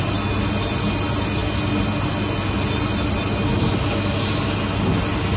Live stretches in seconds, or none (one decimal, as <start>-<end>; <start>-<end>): 0.0-5.4